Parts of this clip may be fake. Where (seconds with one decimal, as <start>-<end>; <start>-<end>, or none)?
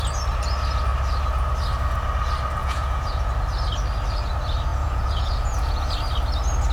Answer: 2.6-3.3; 4.7-5.9